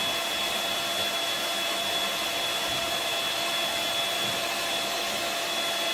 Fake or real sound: real